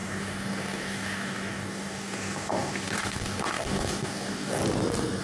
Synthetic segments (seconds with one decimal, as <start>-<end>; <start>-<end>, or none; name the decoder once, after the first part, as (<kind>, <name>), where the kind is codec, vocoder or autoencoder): 0.0-4.6 (codec, DAC)